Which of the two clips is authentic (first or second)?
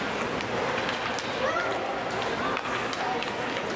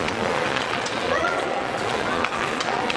first